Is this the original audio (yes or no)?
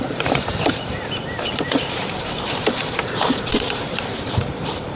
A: no